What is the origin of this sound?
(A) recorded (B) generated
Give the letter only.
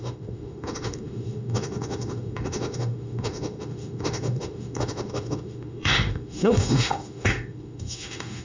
B